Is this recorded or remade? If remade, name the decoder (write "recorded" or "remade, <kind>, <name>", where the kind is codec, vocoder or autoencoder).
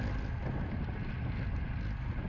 recorded